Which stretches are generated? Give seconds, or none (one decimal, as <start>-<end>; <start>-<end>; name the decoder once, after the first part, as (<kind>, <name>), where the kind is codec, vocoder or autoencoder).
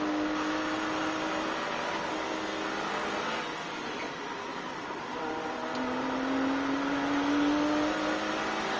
none